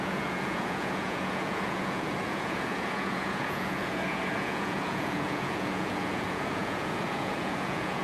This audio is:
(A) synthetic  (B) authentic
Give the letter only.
A